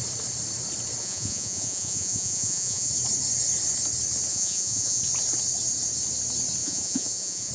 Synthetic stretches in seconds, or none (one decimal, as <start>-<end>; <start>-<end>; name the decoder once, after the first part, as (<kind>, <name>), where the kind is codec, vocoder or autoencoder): 1.0-2.9 (vocoder, Vocos); 4.3-5.0; 6.6-7.5